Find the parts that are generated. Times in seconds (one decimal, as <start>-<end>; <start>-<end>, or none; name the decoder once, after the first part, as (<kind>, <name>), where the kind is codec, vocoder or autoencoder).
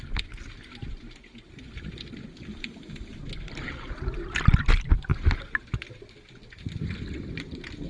none